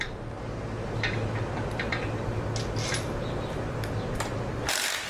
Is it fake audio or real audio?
real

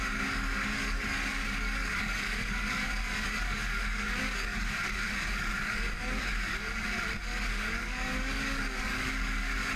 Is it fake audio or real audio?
fake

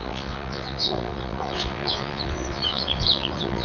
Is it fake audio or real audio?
fake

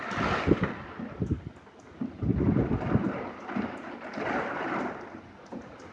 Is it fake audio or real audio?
fake